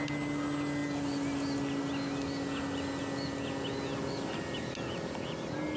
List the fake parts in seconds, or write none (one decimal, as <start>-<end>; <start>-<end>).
none

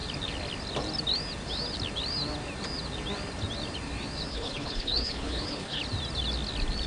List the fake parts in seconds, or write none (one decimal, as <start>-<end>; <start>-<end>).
4.3-5.8